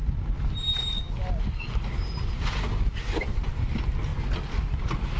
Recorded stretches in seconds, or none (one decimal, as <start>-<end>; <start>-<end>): 0.0-5.2